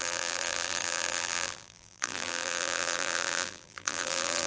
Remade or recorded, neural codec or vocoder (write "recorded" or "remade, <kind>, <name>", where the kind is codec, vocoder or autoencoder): remade, vocoder, BigVGAN v2